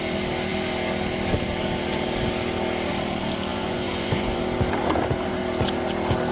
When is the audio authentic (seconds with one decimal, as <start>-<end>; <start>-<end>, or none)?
0.0-3.5; 4.4-6.3